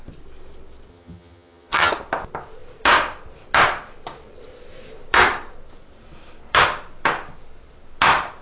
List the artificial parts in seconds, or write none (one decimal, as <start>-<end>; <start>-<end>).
0.9-1.9